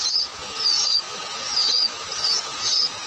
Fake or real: fake